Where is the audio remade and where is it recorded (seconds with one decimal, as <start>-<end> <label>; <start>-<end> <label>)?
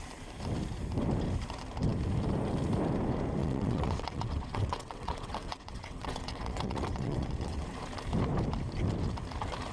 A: 0.0-3.4 recorded; 3.4-7.8 remade; 7.8-9.7 recorded